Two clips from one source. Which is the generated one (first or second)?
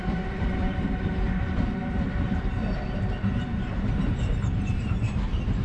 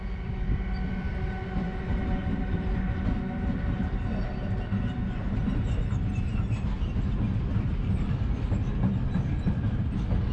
first